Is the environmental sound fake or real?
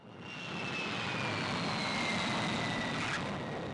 real